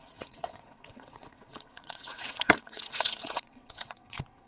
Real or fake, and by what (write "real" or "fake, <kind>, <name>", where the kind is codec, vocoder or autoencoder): fake, vocoder, WaveNeXt